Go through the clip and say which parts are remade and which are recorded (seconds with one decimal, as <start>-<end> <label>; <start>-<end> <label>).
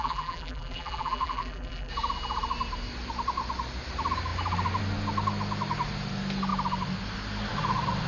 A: 0.0-1.9 remade; 1.9-8.1 recorded